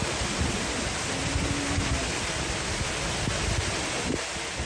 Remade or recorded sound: recorded